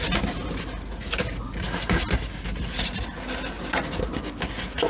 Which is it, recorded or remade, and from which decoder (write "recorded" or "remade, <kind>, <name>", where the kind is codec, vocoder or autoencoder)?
recorded